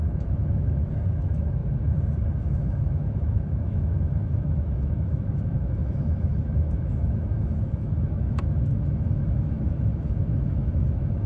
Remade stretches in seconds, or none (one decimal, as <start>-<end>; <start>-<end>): 0.0-1.6; 2.4-11.3